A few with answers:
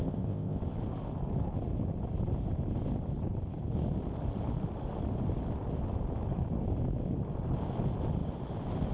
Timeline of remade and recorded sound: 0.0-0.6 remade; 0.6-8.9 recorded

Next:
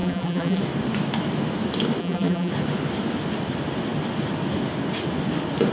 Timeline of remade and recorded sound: 0.0-0.6 remade; 0.6-2.0 recorded; 2.0-2.5 remade; 2.5-5.7 recorded

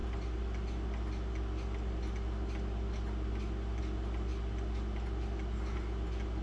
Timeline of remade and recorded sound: 0.0-6.4 recorded

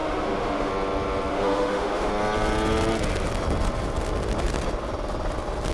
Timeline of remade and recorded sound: 0.0-0.7 remade; 0.7-1.3 recorded; 1.3-2.1 remade; 2.1-5.7 recorded

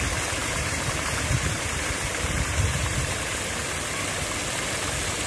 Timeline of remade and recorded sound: 0.0-0.4 recorded; 0.4-3.6 remade; 3.6-5.3 recorded